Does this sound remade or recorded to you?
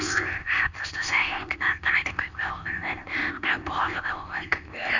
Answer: remade